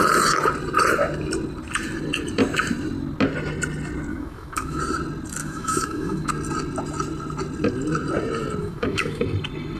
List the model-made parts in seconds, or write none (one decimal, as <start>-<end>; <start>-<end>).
4.1-4.8; 5.4-6.3; 8.6-9.2

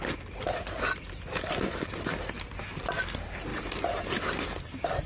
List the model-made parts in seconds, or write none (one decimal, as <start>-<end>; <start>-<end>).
none

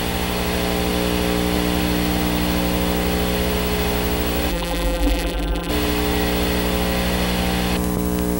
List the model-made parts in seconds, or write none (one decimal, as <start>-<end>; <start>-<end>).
4.5-5.7

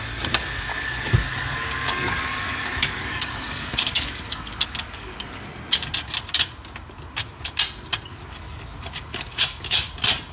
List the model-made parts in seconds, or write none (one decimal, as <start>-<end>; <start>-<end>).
0.7-5.5; 8.1-9.9

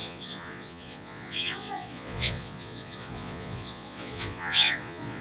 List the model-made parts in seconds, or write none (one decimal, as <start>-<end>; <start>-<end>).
0.0-5.2

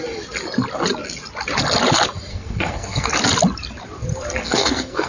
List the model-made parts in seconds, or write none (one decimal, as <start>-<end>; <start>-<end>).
2.3-3.1; 4.4-5.1

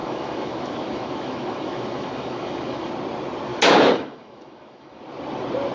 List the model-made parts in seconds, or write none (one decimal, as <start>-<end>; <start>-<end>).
0.0-2.9; 3.5-5.0

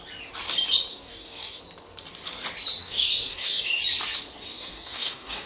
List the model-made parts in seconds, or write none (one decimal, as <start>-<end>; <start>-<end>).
0.9-1.6; 2.8-3.8; 4.5-5.5